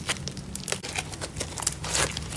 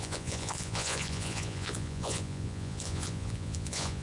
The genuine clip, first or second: first